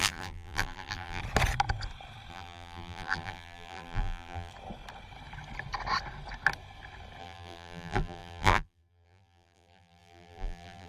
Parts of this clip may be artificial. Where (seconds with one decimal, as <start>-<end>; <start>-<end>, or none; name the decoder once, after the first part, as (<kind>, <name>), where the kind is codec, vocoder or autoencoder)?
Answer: 0.0-1.2 (vocoder, BigVGAN v2); 2.3-4.5; 7.2-10.9